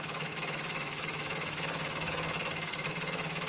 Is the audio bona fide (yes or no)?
no